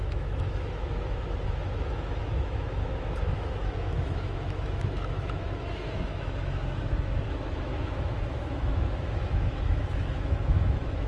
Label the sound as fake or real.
fake